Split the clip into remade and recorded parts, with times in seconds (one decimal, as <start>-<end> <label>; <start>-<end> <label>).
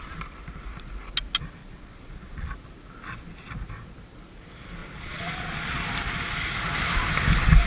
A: 0.0-1.6 recorded; 1.6-2.5 remade; 2.5-4.8 recorded; 4.8-5.8 remade; 5.8-7.7 recorded